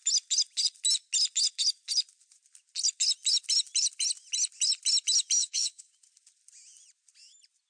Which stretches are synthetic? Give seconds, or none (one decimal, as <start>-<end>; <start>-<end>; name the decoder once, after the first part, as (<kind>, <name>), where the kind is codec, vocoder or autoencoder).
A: 5.4-5.9 (vocoder, Vocos)